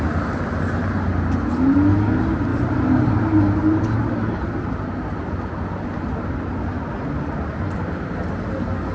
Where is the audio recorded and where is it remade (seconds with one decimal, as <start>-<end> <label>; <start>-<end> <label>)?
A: 0.0-8.9 recorded